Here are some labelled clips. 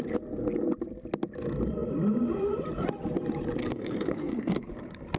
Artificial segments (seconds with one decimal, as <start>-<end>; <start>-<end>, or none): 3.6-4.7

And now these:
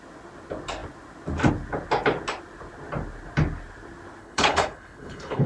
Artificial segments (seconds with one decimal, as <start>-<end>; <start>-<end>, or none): 4.2-5.5

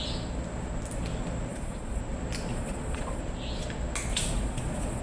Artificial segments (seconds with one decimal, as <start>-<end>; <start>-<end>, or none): 1.5-2.0; 2.5-3.2; 4.1-5.0

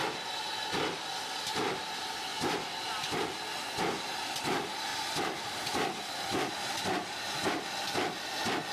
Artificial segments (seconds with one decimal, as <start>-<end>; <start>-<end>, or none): 2.3-3.2; 4.9-6.5

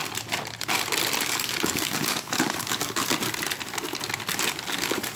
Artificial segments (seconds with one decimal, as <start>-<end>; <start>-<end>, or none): 1.2-3.0